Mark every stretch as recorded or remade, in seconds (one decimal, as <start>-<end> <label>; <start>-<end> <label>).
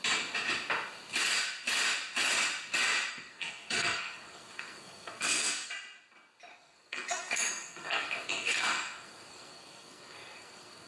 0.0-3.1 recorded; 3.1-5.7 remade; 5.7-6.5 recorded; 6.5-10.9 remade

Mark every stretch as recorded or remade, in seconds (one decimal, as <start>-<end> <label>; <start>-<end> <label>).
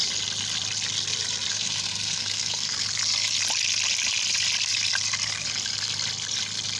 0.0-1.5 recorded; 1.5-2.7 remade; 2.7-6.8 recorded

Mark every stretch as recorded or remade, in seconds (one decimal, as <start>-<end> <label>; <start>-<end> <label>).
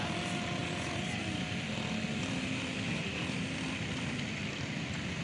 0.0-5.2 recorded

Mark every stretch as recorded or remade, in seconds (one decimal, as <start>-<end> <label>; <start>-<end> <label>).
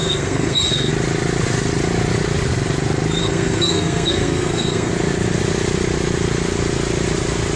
0.0-0.9 remade; 0.9-3.2 recorded; 3.2-4.9 remade; 4.9-7.6 recorded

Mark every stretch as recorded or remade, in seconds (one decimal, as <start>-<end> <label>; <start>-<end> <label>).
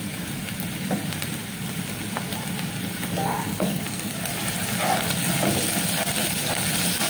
0.0-3.2 recorded; 3.2-4.1 remade; 4.1-7.1 recorded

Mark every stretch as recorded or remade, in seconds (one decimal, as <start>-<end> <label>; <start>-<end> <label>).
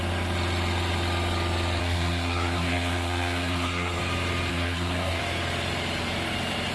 0.0-1.8 recorded; 1.8-4.0 remade; 4.0-4.5 recorded; 4.5-5.2 remade; 5.2-6.7 recorded